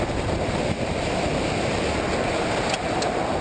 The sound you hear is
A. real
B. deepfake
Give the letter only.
A